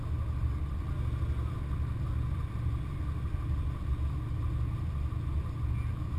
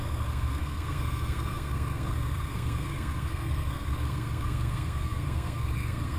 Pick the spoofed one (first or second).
second